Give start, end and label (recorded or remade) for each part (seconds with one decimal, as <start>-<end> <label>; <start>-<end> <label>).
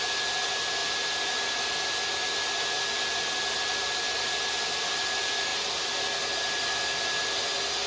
0.0-7.9 recorded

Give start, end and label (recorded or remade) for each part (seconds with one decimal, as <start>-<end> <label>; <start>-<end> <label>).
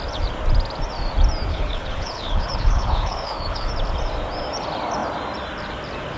0.0-1.5 recorded; 1.5-3.7 remade; 3.7-6.2 recorded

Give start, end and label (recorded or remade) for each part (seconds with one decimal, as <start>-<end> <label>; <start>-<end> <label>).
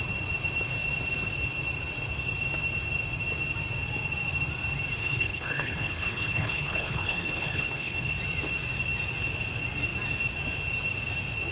0.0-5.0 recorded; 5.0-8.1 remade; 8.1-11.5 recorded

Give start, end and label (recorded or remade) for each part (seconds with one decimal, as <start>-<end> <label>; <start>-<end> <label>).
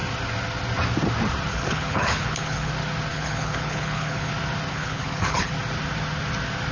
0.0-1.5 recorded; 1.5-2.7 remade; 2.7-3.1 recorded; 3.1-4.3 remade; 4.3-4.7 recorded; 4.7-5.5 remade; 5.5-6.7 recorded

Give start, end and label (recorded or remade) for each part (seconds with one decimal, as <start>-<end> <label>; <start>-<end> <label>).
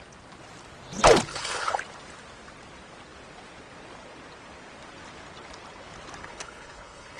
0.0-1.3 recorded; 1.3-1.8 remade; 1.8-6.2 recorded; 6.2-7.2 remade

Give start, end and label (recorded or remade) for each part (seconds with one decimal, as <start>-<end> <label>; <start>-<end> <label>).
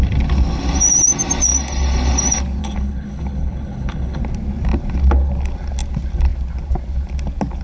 0.0-2.6 recorded; 2.6-4.2 remade; 4.2-7.6 recorded